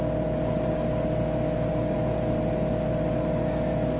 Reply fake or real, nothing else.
real